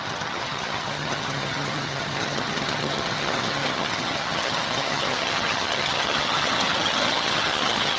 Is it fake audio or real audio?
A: fake